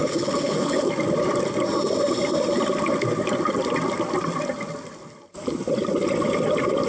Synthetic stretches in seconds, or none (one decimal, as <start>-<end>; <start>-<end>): 0.0-0.9